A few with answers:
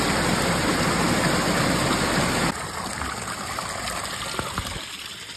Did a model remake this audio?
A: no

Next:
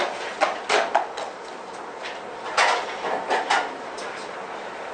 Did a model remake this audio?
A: no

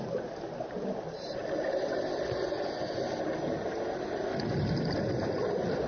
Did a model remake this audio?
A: no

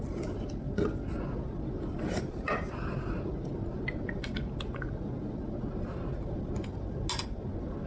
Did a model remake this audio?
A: no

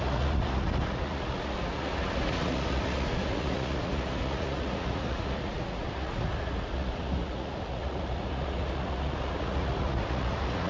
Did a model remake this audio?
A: yes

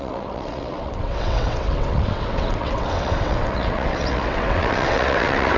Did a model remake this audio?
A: yes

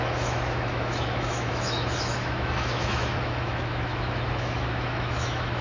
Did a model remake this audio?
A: yes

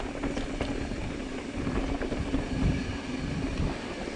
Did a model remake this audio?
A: no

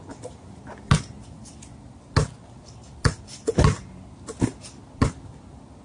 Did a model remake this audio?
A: no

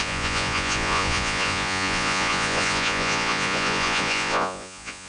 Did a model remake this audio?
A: yes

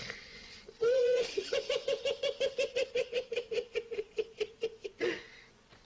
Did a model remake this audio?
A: yes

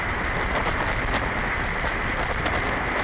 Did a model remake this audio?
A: no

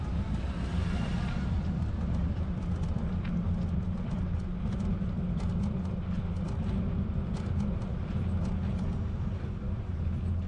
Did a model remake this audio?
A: no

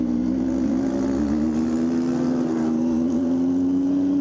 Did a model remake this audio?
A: no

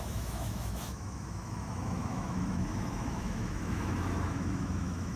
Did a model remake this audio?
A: yes